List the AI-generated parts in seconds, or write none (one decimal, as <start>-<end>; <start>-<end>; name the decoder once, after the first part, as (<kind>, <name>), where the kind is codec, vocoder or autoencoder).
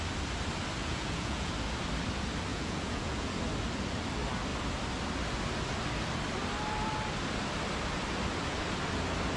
0.8-1.5 (vocoder, Vocos); 2.5-3.3